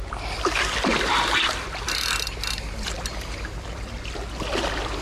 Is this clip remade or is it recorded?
recorded